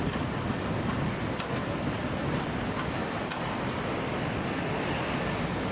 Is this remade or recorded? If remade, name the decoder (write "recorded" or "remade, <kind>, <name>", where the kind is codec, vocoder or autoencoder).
recorded